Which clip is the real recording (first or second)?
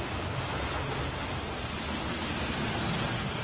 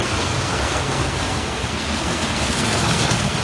first